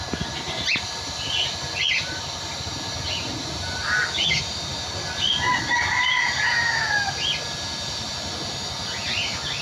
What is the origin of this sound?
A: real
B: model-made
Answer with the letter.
A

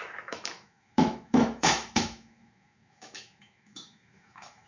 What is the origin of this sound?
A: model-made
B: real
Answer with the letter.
A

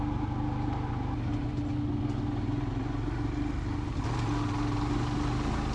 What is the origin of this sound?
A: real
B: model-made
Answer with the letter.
A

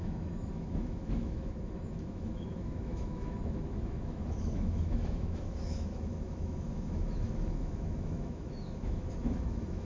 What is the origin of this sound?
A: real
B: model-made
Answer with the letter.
B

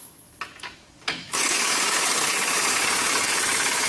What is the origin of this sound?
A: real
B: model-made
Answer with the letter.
B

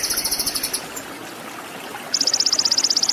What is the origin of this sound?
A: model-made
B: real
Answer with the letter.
B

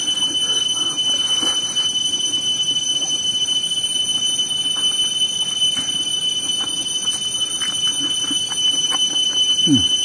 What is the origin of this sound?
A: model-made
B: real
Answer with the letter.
B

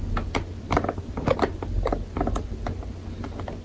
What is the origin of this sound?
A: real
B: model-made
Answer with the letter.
A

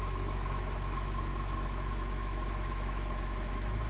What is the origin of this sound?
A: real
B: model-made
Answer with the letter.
B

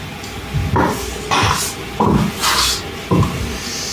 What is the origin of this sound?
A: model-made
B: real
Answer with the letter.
B